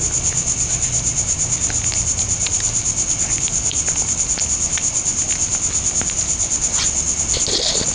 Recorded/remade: recorded